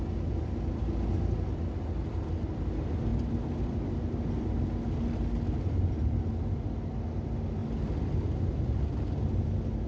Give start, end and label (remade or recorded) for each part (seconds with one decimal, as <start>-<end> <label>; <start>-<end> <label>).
0.0-9.9 recorded